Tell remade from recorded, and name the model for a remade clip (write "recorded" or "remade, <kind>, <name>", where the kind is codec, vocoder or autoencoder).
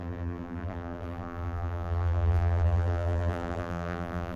remade, vocoder, BigVGAN v2